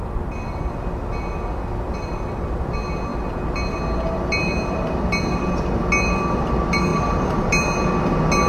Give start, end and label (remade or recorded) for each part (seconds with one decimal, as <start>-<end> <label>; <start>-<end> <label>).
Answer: 0.0-6.9 recorded; 6.9-7.5 remade; 7.5-8.5 recorded